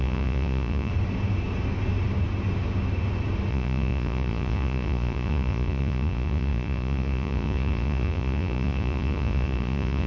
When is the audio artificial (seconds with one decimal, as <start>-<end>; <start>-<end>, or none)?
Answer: 0.0-0.9; 3.5-10.1